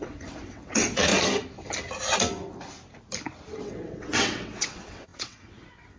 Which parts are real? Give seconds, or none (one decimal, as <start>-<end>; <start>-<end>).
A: 1.1-3.6